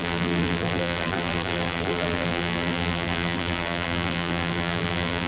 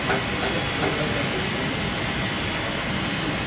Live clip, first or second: second